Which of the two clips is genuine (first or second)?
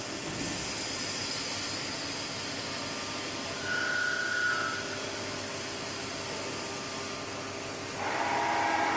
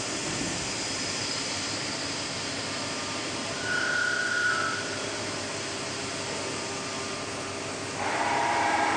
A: first